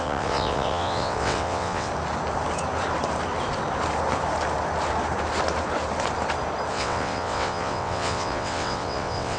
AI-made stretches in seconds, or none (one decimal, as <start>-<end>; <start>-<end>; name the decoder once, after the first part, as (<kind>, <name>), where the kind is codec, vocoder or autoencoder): 0.0-1.9 (vocoder, WaveNeXt); 6.7-9.4